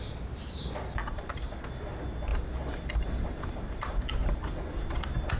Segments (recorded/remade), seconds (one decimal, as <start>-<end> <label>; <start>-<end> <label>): 0.0-1.0 recorded; 1.0-1.7 remade; 1.7-2.3 recorded; 2.3-5.0 remade; 5.0-5.4 recorded